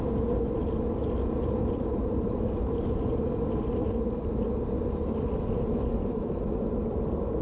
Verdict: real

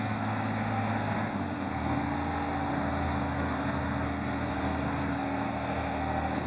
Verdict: fake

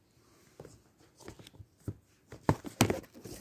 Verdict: real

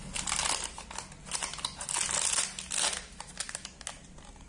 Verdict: real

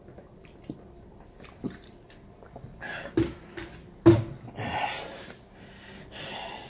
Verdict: real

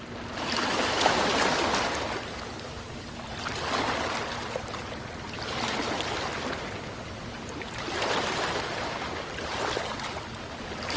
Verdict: real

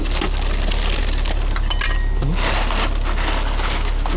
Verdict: real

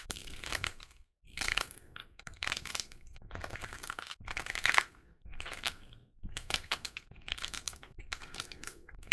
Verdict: fake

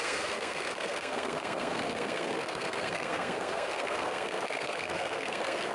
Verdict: fake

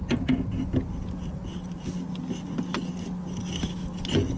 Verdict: real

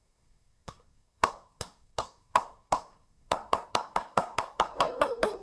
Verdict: fake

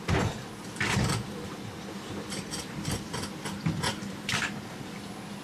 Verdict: real